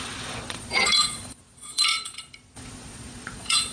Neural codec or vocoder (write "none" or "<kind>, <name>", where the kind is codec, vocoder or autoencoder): vocoder, Vocos